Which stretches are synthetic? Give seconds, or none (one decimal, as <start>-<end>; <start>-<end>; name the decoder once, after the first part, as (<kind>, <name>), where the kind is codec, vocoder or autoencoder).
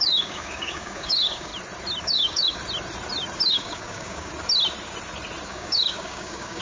0.0-1.5 (codec, DAC); 2.0-2.6; 3.5-4.3; 5.5-6.6